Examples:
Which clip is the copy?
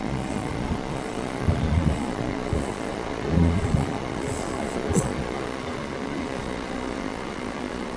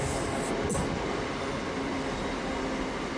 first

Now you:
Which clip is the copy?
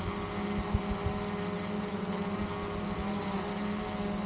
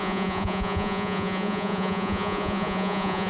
second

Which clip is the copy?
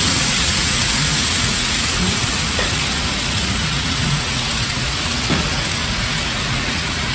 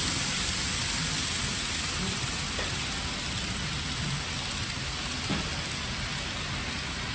first